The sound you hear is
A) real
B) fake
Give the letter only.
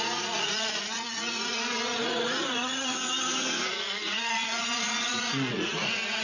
B